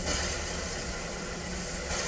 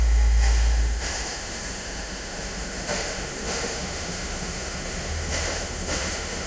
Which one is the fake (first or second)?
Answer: second